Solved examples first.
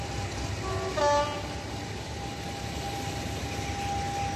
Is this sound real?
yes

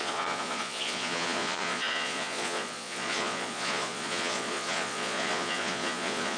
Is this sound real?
no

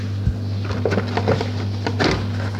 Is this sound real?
yes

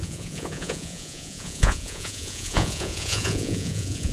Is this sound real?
no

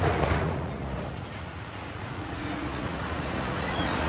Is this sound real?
no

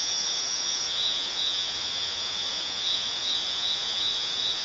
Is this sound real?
no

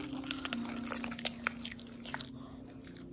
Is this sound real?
yes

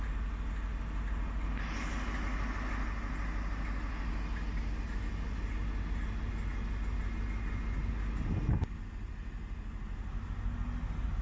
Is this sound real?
yes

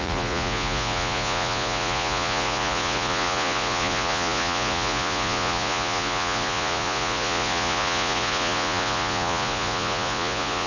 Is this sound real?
no